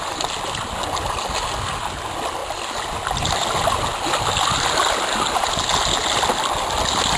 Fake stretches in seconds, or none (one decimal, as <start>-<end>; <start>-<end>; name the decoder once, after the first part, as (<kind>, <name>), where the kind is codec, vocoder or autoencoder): none